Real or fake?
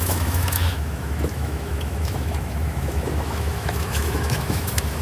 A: fake